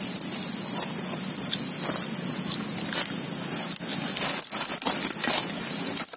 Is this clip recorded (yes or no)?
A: yes